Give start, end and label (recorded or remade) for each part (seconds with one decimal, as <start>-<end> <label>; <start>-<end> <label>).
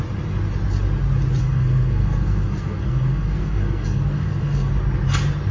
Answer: 0.0-1.4 recorded; 1.4-4.7 remade; 4.7-5.5 recorded